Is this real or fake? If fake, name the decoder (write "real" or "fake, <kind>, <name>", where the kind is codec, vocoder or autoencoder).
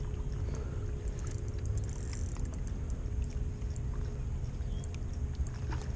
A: real